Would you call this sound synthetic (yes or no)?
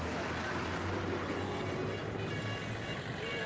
no